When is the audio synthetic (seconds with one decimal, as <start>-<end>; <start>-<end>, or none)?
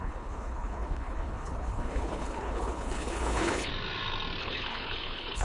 0.0-3.7; 4.4-5.4